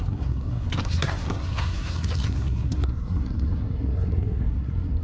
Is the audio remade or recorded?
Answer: remade